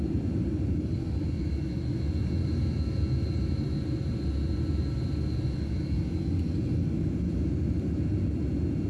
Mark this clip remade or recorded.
recorded